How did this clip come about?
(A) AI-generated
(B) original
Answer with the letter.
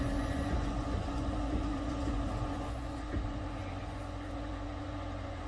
A